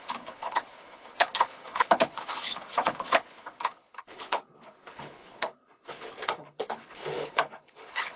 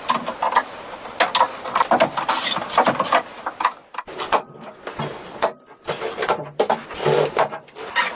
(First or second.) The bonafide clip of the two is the second